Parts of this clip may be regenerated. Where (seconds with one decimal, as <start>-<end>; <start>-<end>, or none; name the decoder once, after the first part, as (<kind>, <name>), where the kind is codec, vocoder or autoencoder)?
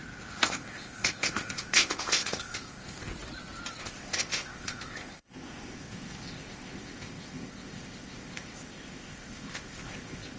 0.0-3.1 (codec, ZipCodec); 3.8-10.4